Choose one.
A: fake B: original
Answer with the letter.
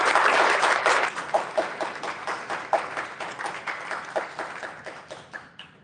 A